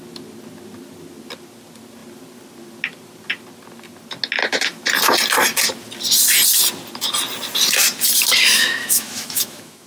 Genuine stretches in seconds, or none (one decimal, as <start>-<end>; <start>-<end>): 0.0-8.4